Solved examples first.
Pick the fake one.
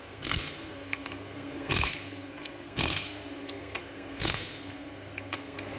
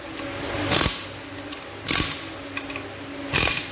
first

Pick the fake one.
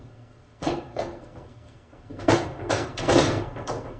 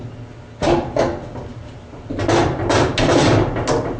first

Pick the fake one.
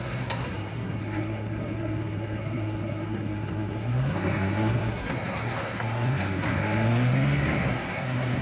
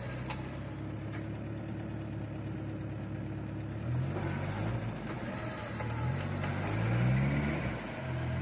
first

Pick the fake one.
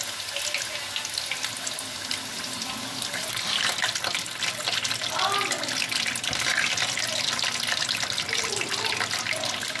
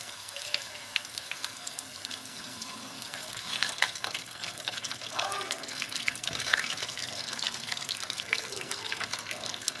second